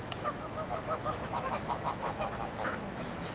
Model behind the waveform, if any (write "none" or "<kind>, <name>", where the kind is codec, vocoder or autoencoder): autoencoder, DAC-VAE